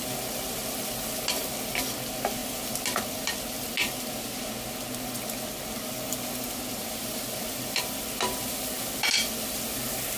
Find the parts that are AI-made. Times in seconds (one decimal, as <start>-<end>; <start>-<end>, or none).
6.8-7.8